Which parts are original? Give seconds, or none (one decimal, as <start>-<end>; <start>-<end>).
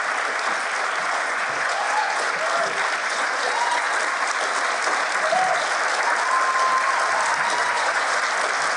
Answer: 0.0-1.0; 2.3-3.0; 3.9-7.6; 8.2-8.8